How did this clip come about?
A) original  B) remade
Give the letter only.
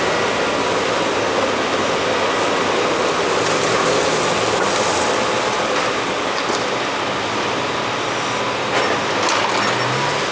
A